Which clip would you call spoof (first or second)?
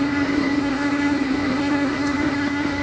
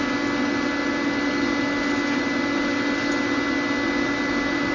first